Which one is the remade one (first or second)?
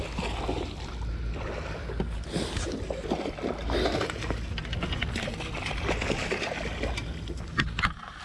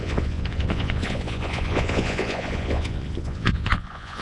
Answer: second